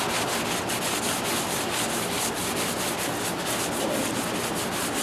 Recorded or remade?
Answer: recorded